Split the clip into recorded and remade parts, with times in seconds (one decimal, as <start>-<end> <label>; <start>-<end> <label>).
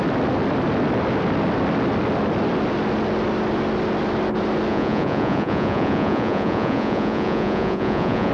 0.0-4.7 recorded; 4.7-8.3 remade